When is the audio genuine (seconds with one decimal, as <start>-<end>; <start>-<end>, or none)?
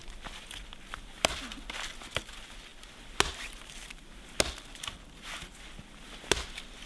1.3-6.9